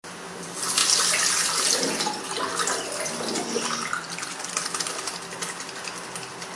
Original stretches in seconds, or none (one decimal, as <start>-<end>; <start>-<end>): 0.0-6.6